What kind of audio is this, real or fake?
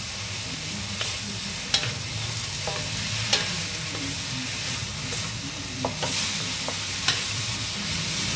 real